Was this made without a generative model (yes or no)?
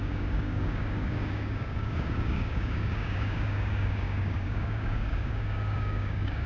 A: no